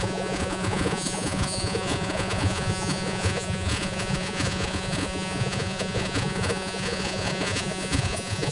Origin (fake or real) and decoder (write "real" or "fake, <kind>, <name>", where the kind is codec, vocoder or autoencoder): fake, vocoder, Vocos